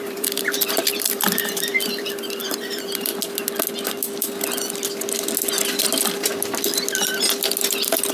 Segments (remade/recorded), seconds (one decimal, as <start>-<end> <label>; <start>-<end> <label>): 0.0-3.1 remade; 3.1-8.1 recorded